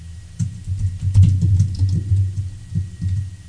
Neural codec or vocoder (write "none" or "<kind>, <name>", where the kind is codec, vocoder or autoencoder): none